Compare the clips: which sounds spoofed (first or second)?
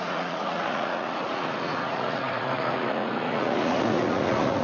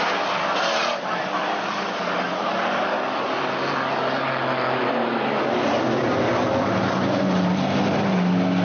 first